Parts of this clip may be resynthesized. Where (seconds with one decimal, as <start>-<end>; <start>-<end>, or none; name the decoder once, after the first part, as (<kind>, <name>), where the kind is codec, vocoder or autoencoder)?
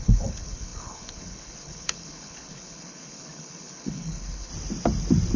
0.0-4.5 (codec, HILCodec)